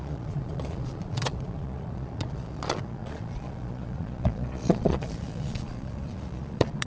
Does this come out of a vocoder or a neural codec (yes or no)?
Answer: yes